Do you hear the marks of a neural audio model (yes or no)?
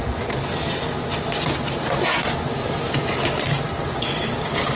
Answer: no